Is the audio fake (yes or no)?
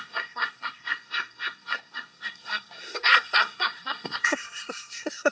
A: yes